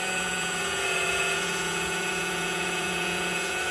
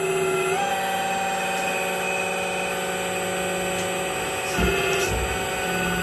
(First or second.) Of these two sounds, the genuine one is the second